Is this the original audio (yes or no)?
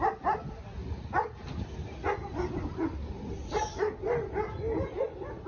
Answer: yes